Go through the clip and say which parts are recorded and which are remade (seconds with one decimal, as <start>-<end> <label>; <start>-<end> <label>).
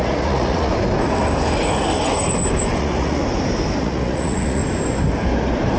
0.0-0.7 remade; 0.7-2.8 recorded; 2.8-3.2 remade; 3.2-3.8 recorded; 3.8-4.6 remade; 4.6-5.8 recorded